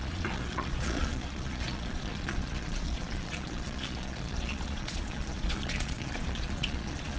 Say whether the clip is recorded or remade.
remade